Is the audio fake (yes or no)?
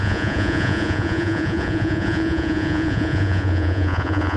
yes